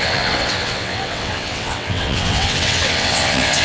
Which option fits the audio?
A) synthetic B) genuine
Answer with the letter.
A